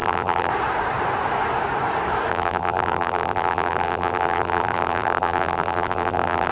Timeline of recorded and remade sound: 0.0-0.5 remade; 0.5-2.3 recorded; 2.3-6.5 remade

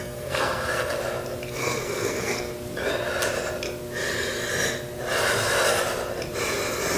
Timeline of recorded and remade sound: 0.0-1.0 remade; 1.0-1.5 recorded; 1.5-2.5 remade; 2.5-7.0 recorded

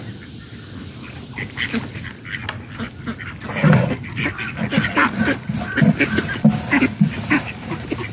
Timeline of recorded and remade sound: 0.0-8.1 recorded

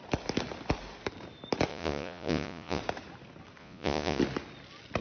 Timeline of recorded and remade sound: 0.0-1.7 recorded; 1.7-2.8 remade; 2.8-3.6 recorded; 3.6-4.2 remade; 4.2-5.0 recorded

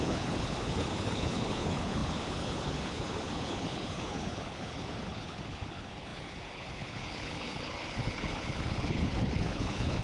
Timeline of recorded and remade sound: 0.0-10.0 remade

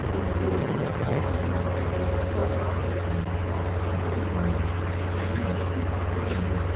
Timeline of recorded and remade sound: 0.0-0.6 recorded; 0.6-1.2 remade; 1.2-6.8 recorded

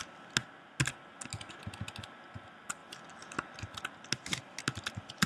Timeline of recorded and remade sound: 0.0-5.3 recorded